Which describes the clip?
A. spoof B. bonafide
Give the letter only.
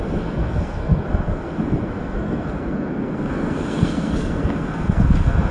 A